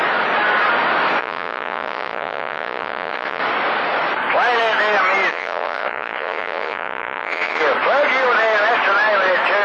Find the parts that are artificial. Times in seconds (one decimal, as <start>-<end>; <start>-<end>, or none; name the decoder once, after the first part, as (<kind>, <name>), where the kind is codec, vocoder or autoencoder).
1.2-3.4 (vocoder, Vocos); 5.3-7.6